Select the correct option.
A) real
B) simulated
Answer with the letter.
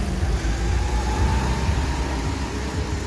A